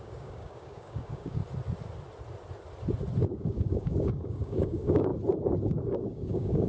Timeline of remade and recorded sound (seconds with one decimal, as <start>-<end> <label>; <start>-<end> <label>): 0.0-1.4 remade; 1.4-3.2 recorded; 3.2-5.1 remade; 5.1-5.6 recorded; 5.6-6.7 remade